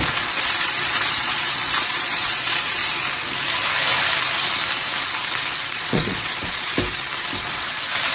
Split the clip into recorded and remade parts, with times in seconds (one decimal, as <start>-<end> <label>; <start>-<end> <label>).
0.0-2.8 remade; 2.8-5.7 recorded; 5.7-6.7 remade; 6.7-7.6 recorded; 7.6-8.1 remade